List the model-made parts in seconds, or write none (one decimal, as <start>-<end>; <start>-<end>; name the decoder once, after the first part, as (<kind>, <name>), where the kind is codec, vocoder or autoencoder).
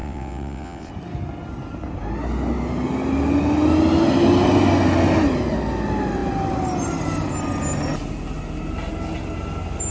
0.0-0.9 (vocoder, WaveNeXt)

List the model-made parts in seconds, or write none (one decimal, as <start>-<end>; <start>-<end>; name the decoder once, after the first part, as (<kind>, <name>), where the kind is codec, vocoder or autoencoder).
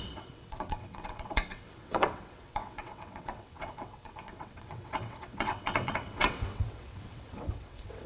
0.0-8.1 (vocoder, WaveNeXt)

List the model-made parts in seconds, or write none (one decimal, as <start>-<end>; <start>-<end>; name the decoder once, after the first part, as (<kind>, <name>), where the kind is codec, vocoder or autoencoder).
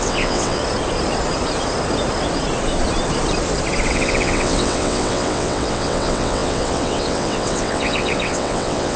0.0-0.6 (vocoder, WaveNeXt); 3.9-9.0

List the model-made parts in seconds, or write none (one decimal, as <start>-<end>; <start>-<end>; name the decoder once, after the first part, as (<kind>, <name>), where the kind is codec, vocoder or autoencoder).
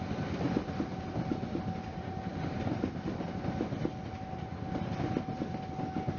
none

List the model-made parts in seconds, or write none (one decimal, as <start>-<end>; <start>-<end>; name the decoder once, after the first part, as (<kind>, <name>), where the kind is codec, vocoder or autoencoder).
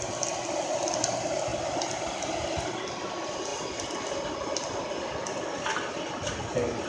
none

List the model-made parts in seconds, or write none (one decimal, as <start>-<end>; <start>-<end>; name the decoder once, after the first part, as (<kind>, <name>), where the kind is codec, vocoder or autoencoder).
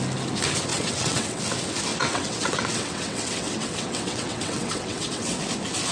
0.7-1.4 (vocoder, WaveNeXt); 1.9-5.4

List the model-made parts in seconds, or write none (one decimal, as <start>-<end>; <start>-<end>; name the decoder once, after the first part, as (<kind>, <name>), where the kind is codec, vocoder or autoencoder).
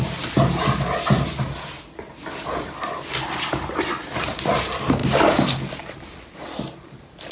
none